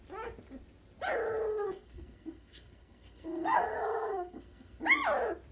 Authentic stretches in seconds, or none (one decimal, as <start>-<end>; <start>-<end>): 0.0-1.5; 4.8-5.5